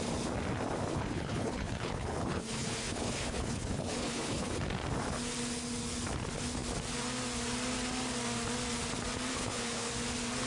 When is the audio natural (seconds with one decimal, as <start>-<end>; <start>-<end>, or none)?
0.0-0.9; 4.6-9.3; 9.9-10.5